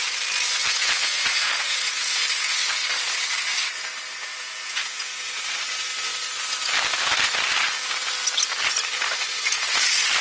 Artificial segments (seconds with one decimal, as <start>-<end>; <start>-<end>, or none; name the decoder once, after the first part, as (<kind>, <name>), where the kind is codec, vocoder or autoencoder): 0.6-2.2 (vocoder, Vocos); 4.3-5.3